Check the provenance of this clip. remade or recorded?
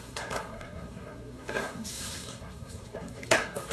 remade